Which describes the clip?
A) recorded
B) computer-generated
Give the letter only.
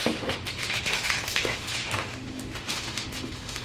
B